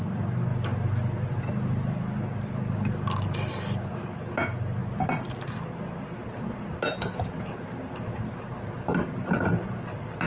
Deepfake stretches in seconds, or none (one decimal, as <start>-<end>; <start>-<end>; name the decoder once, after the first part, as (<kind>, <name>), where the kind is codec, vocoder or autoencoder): none